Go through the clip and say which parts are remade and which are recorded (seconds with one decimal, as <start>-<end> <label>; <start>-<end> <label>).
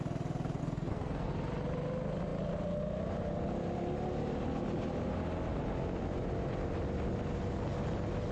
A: 0.0-0.6 recorded; 0.6-1.3 remade; 1.3-8.3 recorded